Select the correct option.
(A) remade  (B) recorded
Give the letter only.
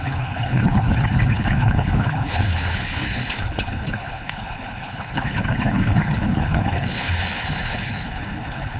A